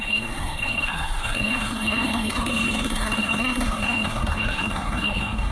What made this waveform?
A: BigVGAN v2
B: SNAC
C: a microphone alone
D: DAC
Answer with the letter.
B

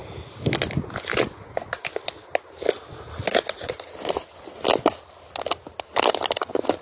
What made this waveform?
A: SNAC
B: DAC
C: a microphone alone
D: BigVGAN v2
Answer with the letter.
C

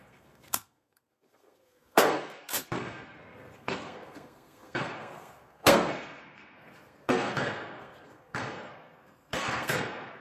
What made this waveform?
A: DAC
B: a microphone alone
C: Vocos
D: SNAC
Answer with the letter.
D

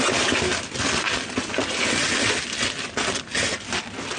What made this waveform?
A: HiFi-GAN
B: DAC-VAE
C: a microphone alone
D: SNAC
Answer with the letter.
C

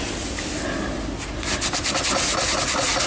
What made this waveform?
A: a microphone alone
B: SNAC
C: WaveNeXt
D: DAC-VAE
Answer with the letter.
A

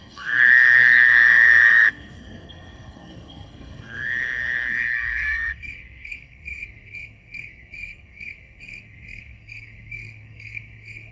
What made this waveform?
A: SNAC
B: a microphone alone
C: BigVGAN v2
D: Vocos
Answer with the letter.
A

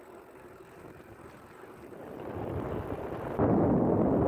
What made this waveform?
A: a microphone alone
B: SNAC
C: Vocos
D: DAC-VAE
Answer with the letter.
A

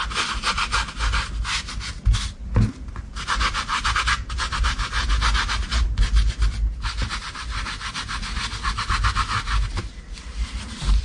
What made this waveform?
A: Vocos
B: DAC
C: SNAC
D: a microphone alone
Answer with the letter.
D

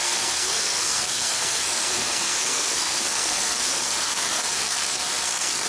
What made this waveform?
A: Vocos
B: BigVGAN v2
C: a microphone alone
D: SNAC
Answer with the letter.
D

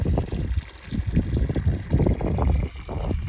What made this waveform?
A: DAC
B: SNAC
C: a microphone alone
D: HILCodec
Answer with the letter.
C